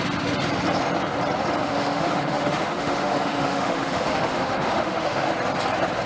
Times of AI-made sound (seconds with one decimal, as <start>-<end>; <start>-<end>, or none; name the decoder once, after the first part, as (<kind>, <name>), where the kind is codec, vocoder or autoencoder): 1.6-5.3 (autoencoder, DAC-VAE)